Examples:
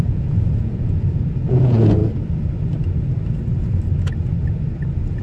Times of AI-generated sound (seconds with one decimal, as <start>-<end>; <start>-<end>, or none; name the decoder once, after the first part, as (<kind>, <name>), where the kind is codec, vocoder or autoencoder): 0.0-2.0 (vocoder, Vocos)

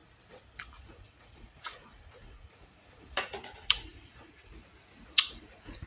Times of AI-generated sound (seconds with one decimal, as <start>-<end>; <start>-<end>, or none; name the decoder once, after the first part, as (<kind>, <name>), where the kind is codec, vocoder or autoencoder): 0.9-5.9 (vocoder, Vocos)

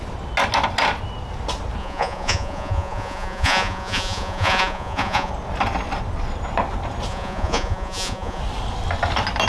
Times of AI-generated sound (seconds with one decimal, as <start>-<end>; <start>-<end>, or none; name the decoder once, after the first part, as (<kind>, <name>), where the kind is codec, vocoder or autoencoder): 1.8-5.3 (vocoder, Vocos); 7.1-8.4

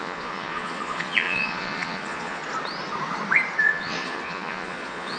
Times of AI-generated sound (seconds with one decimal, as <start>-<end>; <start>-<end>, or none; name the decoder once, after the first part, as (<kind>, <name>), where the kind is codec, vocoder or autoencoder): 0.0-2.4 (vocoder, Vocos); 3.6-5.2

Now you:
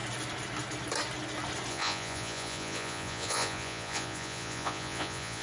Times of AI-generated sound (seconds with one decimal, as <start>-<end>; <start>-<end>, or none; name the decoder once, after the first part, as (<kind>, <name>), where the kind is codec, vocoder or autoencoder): 1.7-5.4 (vocoder, Vocos)

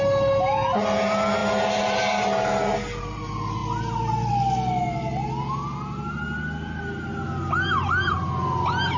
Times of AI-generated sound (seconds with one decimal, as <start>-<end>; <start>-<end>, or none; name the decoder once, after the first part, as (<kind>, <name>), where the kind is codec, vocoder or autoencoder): none